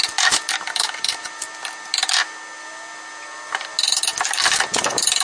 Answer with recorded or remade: recorded